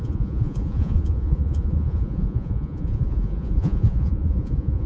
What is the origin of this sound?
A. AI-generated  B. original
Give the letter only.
A